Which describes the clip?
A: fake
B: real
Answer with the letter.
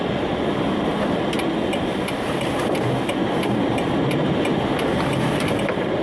B